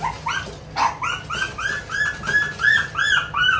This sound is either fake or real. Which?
real